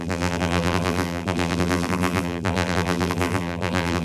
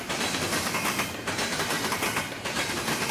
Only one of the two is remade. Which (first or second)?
first